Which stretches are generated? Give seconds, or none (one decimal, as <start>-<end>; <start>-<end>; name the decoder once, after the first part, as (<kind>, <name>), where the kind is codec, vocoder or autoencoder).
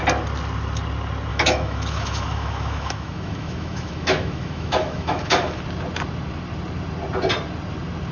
1.3-5.6 (autoencoder, DAC-VAE)